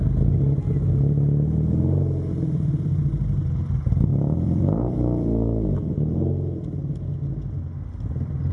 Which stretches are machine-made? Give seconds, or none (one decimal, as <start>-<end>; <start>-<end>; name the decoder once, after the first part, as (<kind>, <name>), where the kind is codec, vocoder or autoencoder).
4.1-4.6 (vocoder, BigVGAN v2)